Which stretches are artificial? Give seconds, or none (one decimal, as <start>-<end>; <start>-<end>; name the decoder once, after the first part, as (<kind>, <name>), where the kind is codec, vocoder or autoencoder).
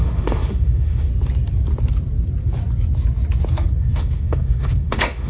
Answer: 0.0-1.1 (autoencoder, DAC-VAE); 3.8-5.3